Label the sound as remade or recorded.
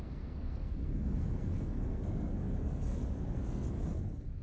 remade